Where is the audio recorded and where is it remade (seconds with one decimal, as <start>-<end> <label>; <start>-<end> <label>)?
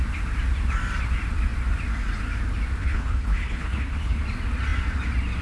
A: 0.0-2.8 recorded; 2.8-4.2 remade; 4.2-5.4 recorded